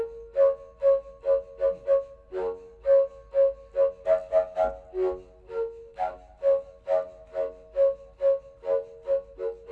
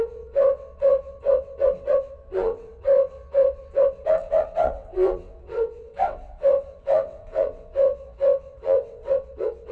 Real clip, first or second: first